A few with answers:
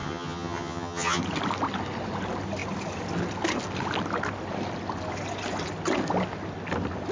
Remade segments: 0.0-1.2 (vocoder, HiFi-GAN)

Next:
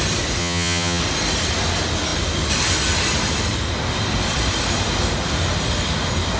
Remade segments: 0.4-1.0 (vocoder, HiFi-GAN)

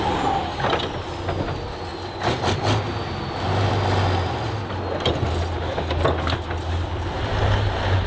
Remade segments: none

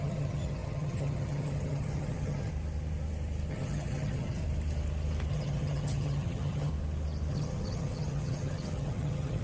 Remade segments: 0.0-2.5 (vocoder, HiFi-GAN); 3.5-4.4; 5.3-6.7; 7.3-9.4

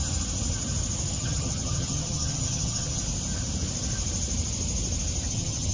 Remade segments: 1.1-3.0 (vocoder, HiFi-GAN); 5.3-5.7

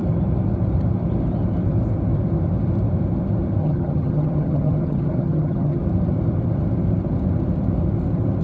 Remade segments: 3.6-5.8 (vocoder, HiFi-GAN)

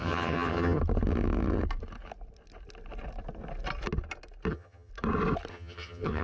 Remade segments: 0.0-0.8 (vocoder, HiFi-GAN); 4.5-4.9; 5.5-6.2

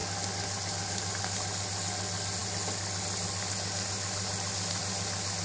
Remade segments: none